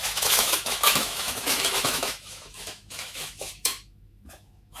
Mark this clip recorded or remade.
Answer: remade